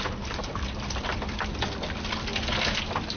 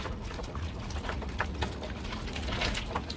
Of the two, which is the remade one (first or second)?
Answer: second